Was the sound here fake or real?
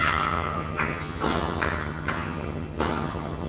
fake